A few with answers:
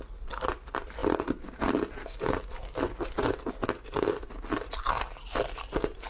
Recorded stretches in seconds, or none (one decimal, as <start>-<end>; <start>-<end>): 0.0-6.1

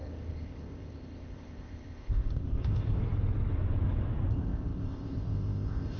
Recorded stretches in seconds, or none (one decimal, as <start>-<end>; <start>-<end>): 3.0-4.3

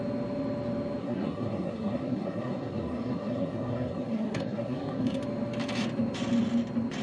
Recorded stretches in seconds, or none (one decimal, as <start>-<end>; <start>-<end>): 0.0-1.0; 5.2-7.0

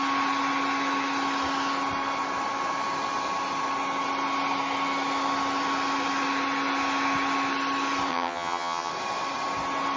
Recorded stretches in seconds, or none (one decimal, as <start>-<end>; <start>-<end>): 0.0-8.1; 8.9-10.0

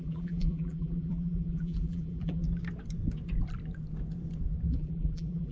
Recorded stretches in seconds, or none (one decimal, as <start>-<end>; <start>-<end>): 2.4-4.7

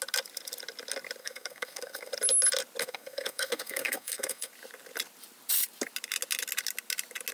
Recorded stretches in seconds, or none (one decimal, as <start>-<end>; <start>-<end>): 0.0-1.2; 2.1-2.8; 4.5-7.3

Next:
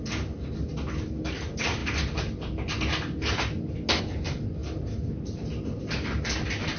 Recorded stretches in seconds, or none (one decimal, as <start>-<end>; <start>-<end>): 0.0-6.8

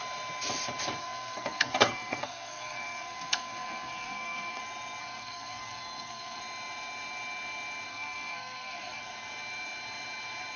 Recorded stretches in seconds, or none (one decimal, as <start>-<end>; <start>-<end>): 0.0-1.0; 4.6-5.0; 6.4-7.9; 9.0-10.6